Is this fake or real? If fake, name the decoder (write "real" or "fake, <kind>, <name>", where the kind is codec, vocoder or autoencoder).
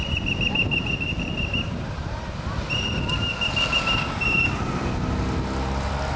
real